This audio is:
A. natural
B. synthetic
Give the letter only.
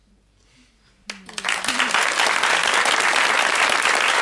A